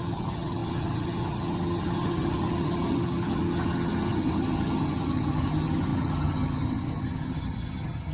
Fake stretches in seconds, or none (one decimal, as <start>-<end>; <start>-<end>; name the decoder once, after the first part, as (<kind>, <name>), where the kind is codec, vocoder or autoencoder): 0.0-8.1 (vocoder, HiFi-GAN)